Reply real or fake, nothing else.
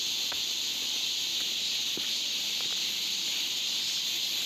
real